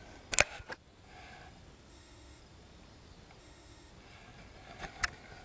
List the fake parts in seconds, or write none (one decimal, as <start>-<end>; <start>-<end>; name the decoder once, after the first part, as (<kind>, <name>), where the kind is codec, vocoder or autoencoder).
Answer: 1.9-2.4 (autoencoder, DAC-VAE); 3.4-3.9